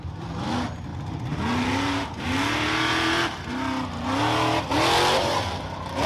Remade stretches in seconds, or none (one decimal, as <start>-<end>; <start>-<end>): none